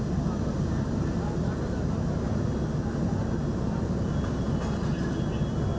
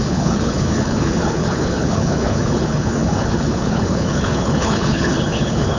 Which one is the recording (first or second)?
first